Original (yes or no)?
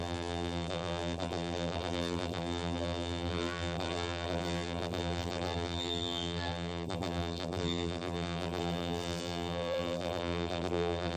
no